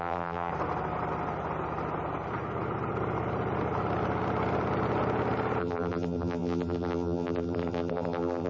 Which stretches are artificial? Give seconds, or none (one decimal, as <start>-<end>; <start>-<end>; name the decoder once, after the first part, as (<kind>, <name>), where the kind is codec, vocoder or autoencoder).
0.0-0.5 (vocoder, BigVGAN v2); 5.6-8.5

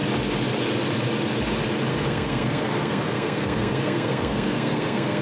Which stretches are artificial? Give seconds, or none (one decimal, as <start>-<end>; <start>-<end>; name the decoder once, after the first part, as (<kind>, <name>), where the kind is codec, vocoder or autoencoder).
1.9-5.2 (codec, SNAC)

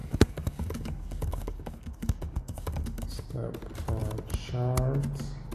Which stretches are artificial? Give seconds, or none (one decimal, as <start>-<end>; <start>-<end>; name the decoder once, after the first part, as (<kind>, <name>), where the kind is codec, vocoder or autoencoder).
0.0-3.1 (codec, DAC)